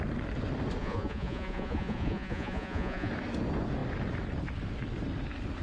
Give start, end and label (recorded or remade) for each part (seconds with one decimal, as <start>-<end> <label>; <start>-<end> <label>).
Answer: 0.0-0.8 recorded; 0.8-3.1 remade; 3.1-5.6 recorded